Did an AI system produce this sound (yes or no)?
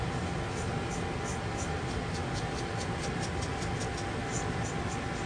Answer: no